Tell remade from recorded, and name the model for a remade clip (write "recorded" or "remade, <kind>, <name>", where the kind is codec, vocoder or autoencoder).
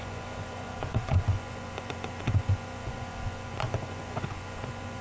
remade, vocoder, Vocos